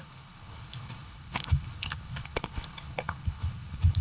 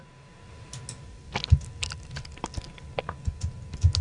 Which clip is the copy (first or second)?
first